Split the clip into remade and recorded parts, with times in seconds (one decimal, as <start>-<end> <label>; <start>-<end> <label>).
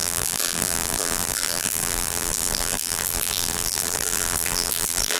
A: 0.0-5.2 remade